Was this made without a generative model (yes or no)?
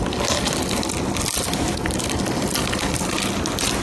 yes